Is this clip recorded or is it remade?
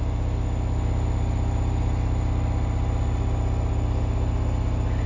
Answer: recorded